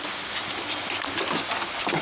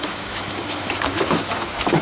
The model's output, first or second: second